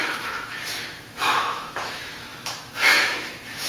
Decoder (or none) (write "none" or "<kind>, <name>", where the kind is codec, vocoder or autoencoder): autoencoder, DAC-VAE